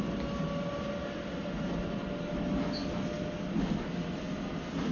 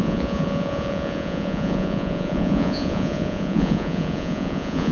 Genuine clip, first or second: first